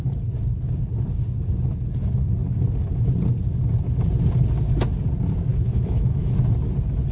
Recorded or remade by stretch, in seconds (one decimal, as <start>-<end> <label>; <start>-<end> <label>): 0.0-5.5 recorded; 5.5-6.3 remade; 6.3-7.1 recorded